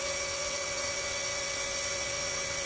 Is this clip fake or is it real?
fake